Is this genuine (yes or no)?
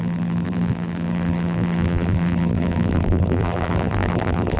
no